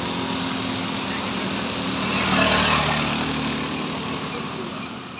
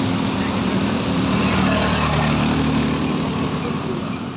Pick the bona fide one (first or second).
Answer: first